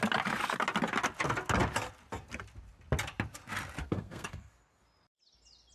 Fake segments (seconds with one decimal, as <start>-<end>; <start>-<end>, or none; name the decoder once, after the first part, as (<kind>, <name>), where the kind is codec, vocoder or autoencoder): 3.8-4.5 (codec, SNAC)